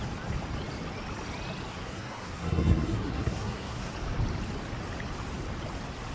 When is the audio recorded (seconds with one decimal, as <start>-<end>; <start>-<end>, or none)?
0.0-1.7; 3.9-6.1